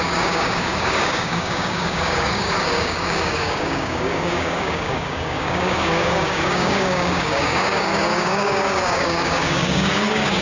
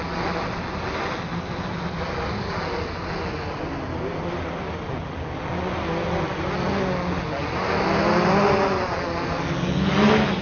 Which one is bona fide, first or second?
second